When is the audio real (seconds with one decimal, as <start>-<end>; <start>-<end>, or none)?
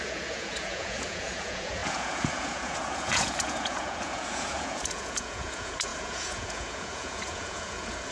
none